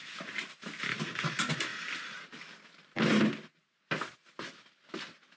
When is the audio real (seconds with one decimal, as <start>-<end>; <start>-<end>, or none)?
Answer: 0.0-1.7; 2.6-5.4